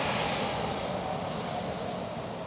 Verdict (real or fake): real